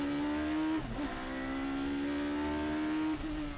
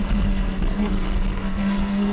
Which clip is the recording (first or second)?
first